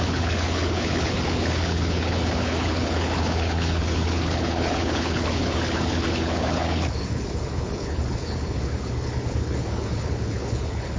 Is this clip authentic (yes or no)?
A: no